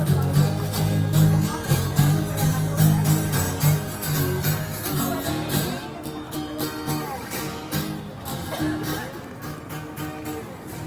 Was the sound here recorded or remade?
recorded